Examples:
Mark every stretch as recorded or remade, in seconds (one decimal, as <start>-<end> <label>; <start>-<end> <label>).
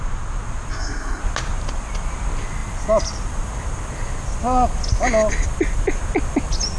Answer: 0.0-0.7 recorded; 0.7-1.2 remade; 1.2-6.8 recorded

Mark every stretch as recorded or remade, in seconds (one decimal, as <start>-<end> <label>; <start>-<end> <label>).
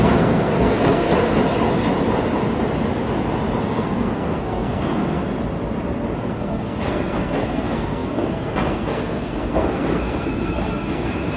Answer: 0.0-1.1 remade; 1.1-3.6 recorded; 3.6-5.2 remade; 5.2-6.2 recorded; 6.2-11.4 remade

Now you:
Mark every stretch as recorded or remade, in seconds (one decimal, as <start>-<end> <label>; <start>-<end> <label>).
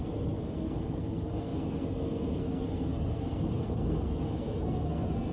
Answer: 0.0-5.3 remade